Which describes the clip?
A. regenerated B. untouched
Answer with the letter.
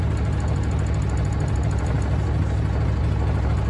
B